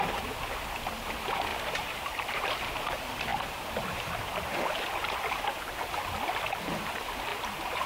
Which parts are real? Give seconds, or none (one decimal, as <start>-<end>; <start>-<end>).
0.0-1.5; 2.5-3.3; 4.3-7.3